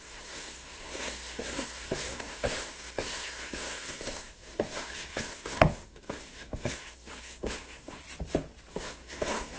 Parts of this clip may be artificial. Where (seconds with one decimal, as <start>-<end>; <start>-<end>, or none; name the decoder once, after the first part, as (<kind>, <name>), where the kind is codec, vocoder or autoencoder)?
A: 0.0-8.0 (codec, SNAC); 8.7-9.6